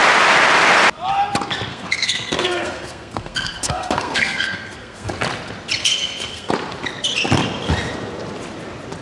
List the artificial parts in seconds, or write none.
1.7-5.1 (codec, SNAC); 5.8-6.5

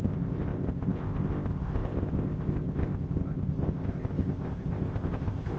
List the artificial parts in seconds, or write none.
0.0-5.6 (codec, ZipCodec)

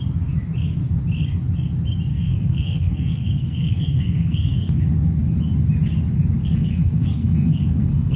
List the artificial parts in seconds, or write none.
2.1-4.8 (codec, SNAC); 6.4-8.2

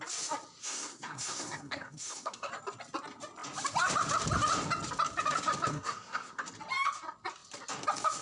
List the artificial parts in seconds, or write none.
0.6-2.5 (codec, SNAC); 5.7-6.4

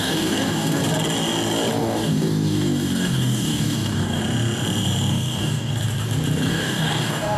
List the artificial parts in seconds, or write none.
0.0-0.8 (codec, DAC); 1.8-4.2; 5.1-5.7; 6.5-7.4

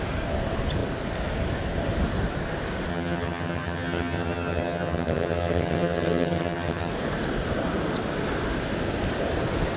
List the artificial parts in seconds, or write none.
2.9-6.9 (vocoder, HiFi-GAN)

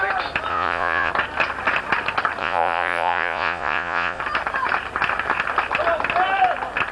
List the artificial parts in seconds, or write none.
0.5-1.1 (vocoder, Vocos); 2.4-4.2

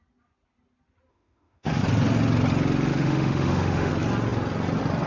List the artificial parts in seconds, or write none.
1.1-1.8 (autoencoder, DAC-VAE); 2.9-3.9